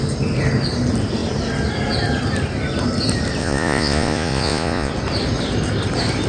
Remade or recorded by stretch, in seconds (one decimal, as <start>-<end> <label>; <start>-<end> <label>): 0.0-3.4 recorded; 3.4-4.9 remade; 4.9-6.3 recorded